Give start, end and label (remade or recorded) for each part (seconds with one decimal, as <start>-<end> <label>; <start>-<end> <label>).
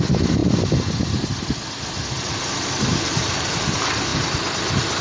0.0-5.0 recorded